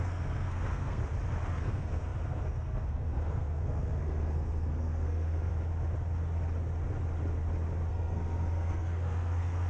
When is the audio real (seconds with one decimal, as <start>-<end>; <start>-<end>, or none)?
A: 1.0-1.5; 5.5-7.9